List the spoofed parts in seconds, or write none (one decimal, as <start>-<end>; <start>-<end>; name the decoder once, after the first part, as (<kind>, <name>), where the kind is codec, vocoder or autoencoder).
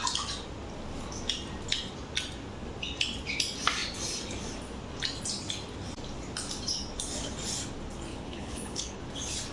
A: 8.1-9.0 (codec, HILCodec)